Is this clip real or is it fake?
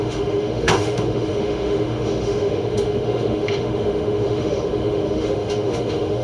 fake